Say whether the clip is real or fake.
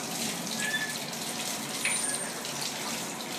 real